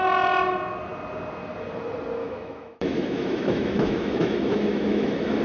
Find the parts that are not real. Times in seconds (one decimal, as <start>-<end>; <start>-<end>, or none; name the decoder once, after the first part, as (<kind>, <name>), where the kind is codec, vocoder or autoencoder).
2.2-5.4 (autoencoder, DAC-VAE)